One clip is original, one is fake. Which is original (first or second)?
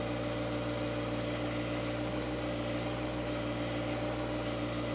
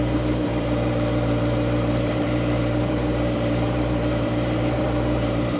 first